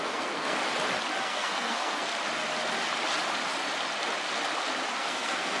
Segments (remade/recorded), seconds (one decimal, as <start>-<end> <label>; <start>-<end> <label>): 0.0-0.6 remade; 0.6-1.2 recorded; 1.2-2.1 remade; 2.1-4.9 recorded; 4.9-5.6 remade